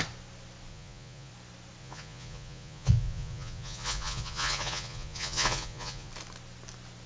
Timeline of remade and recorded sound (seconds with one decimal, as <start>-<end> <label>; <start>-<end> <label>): 0.0-0.7 recorded; 0.7-1.3 remade; 1.3-1.8 recorded; 1.8-6.1 remade; 6.1-7.1 recorded